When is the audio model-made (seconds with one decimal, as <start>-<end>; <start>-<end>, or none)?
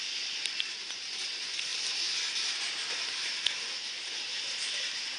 none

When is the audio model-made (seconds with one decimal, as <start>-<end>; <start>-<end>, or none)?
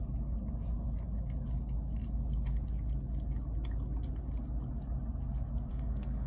5.7-6.3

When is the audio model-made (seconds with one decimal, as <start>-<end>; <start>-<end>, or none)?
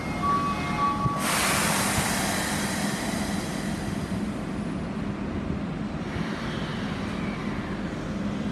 none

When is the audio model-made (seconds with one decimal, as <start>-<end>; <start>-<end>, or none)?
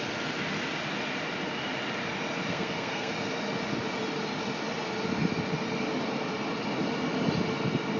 2.5-3.1